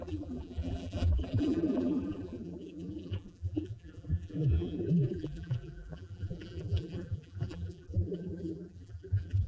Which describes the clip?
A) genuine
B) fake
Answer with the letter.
B